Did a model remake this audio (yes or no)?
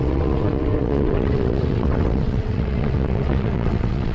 yes